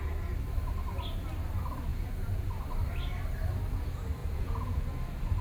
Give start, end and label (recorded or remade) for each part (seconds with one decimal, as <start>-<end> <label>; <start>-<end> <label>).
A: 0.0-1.9 recorded; 1.9-2.5 remade; 2.5-4.2 recorded; 4.2-4.8 remade; 4.8-5.4 recorded